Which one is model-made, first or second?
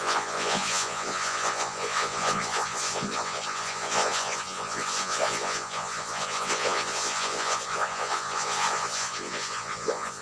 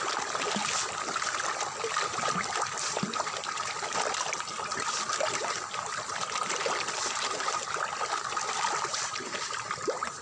first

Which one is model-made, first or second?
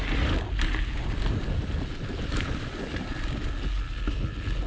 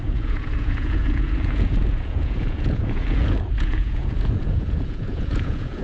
second